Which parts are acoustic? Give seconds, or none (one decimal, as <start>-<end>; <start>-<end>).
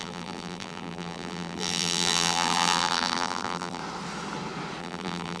3.8-4.8